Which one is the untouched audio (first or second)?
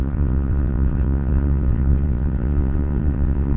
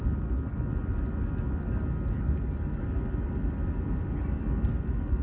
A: second